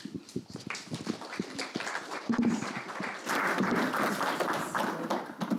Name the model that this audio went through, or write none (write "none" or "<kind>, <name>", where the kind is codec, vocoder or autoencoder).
vocoder, BigVGAN v2